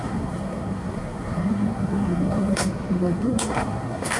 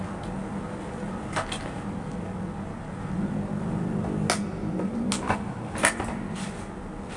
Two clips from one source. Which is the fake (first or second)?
first